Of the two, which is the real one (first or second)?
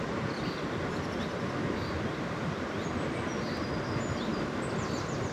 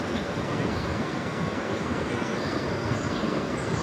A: first